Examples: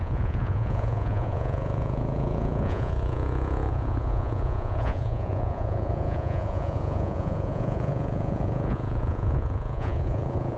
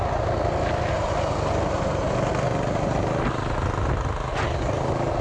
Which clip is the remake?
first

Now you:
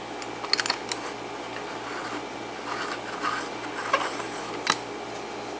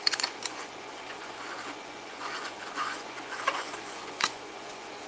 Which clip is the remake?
second